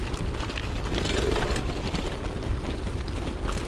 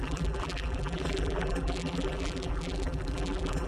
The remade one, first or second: second